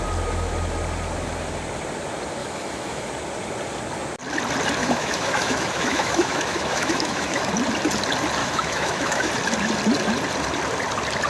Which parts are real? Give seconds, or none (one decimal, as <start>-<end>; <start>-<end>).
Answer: 0.0-2.4; 3.1-4.8; 7.5-8.4; 9.3-11.3